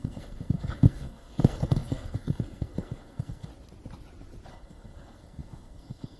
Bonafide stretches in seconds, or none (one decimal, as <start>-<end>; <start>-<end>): 3.5-4.5